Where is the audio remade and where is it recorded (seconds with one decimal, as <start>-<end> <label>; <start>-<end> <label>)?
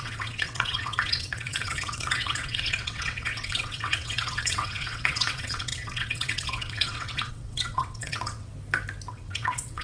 0.0-8.5 remade; 8.5-9.1 recorded; 9.1-9.8 remade